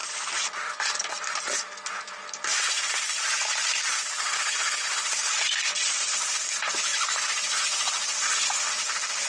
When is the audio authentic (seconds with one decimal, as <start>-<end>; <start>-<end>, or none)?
0.8-2.5; 6.4-6.9; 8.2-9.3

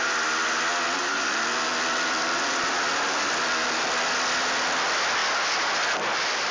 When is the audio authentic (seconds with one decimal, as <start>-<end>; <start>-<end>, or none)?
0.0-1.7; 3.3-6.5